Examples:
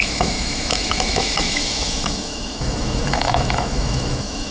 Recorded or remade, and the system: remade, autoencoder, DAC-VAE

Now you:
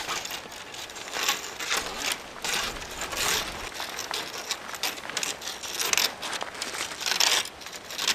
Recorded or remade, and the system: recorded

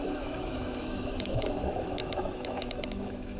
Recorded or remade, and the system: remade, autoencoder, DAC-VAE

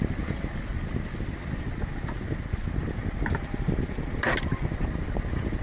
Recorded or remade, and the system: recorded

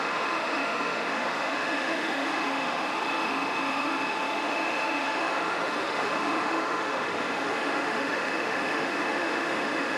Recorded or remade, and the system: remade, autoencoder, DAC-VAE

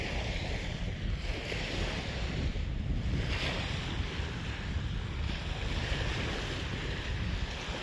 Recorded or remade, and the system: recorded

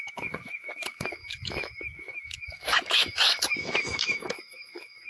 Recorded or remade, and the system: remade, autoencoder, DAC-VAE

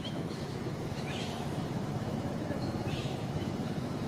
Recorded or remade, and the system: remade, autoencoder, DAC-VAE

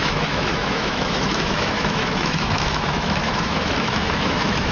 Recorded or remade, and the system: remade, autoencoder, DAC-VAE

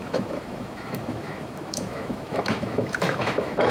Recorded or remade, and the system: remade, autoencoder, DAC-VAE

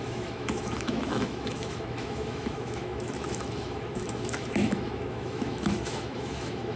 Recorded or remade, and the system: remade, autoencoder, DAC-VAE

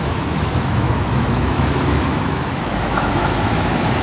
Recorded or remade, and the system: remade, autoencoder, DAC-VAE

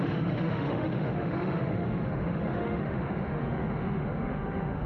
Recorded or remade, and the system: remade, autoencoder, DAC-VAE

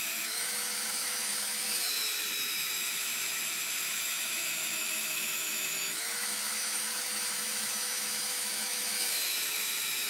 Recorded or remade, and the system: remade, autoencoder, DAC-VAE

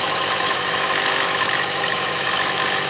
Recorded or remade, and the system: remade, autoencoder, DAC-VAE